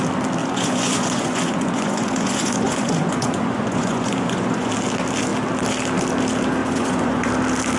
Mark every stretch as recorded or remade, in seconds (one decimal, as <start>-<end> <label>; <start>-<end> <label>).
0.0-0.4 recorded; 0.4-4.7 remade; 4.7-6.6 recorded; 6.6-7.3 remade; 7.3-7.8 recorded